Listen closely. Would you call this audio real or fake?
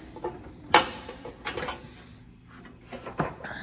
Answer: real